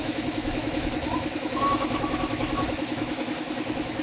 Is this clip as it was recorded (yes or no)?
no